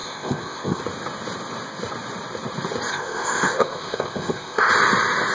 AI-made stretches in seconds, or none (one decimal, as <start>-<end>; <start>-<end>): 0.0-0.8; 2.9-4.7